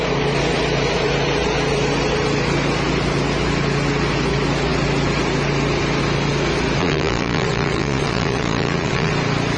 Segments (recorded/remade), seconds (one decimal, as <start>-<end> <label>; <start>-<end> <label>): 0.0-6.8 recorded; 6.8-9.1 remade; 9.1-9.6 recorded

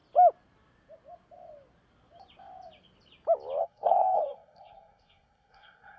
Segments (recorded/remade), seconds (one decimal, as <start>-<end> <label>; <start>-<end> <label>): 0.0-3.6 recorded; 3.6-6.0 remade

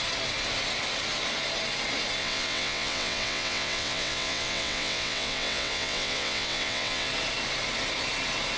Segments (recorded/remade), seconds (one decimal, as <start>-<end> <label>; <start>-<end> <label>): 0.0-2.2 recorded; 2.2-7.1 remade; 7.1-8.6 recorded